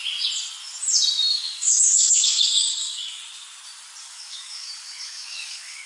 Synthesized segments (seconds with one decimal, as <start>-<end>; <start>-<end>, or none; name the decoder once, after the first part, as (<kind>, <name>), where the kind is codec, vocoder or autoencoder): 1.3-3.2 (codec, DAC); 4.0-5.9